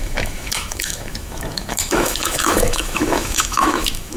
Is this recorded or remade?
remade